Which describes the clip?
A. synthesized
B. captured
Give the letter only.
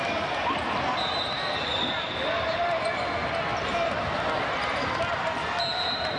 B